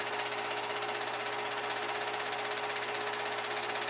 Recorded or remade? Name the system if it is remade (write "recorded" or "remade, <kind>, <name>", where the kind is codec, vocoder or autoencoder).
recorded